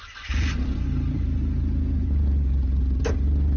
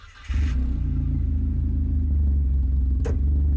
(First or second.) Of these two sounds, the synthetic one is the first